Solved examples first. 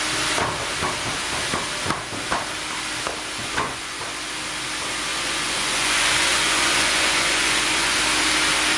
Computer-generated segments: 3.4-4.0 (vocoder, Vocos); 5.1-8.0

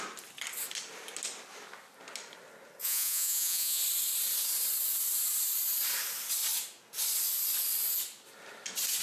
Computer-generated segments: 2.8-3.8 (vocoder, Vocos)

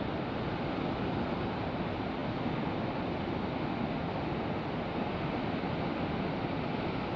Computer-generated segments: none

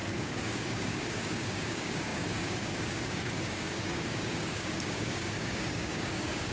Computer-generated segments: 0.0-6.5 (codec, DAC)